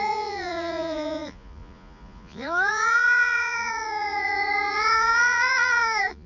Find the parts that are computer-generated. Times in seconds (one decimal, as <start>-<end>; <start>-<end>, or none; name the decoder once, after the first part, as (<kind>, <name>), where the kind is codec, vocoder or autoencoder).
0.0-6.3 (vocoder, Vocos)